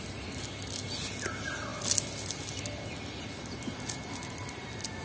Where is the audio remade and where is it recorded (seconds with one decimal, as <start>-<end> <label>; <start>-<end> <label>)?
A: 0.0-5.0 recorded